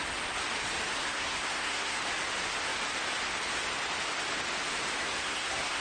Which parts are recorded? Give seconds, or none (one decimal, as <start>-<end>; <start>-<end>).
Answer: 0.0-1.0; 2.0-5.0